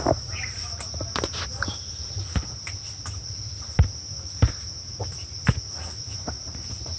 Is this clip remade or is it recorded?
recorded